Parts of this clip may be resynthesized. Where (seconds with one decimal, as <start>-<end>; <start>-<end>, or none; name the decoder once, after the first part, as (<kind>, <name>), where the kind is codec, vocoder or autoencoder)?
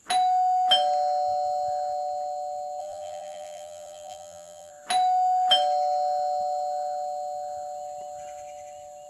2.8-4.7 (vocoder, BigVGAN v2)